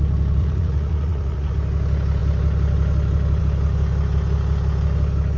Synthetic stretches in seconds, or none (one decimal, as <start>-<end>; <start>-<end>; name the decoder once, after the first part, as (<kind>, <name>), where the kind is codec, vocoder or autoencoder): 0.4-1.5 (vocoder, Vocos)